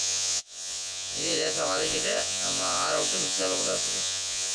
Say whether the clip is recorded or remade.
remade